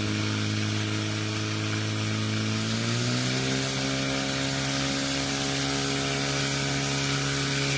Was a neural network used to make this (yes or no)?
no